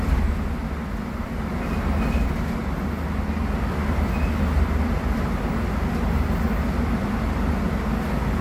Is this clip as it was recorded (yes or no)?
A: yes